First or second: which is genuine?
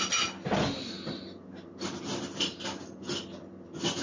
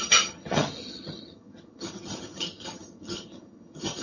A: first